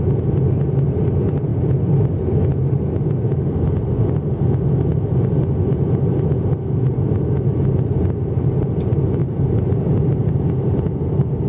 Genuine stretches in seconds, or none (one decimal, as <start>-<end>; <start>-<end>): 0.0-11.5